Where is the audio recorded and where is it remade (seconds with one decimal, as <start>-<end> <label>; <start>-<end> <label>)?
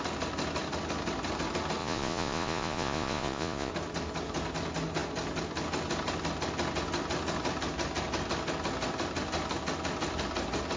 0.0-1.8 recorded; 1.8-3.7 remade; 3.7-10.8 recorded